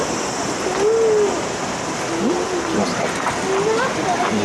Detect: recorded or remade recorded